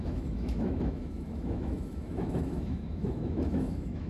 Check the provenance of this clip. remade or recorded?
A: remade